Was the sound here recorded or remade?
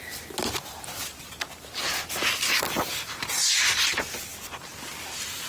recorded